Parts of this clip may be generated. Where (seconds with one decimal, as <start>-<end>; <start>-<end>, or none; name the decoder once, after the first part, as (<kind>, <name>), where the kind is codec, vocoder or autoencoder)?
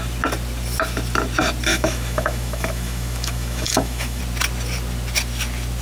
1.7-4.2 (autoencoder, DAC-VAE)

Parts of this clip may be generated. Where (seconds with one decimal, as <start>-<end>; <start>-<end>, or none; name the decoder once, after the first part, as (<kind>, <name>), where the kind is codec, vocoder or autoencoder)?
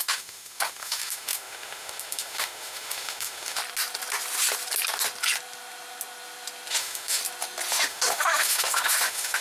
0.0-3.6 (autoencoder, DAC-VAE); 6.7-7.2; 7.7-9.4